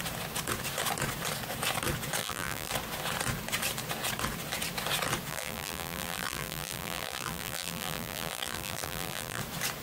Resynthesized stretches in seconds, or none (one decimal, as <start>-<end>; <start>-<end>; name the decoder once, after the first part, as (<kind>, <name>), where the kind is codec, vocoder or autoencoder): 2.2-2.7 (vocoder, BigVGAN v2); 5.3-9.4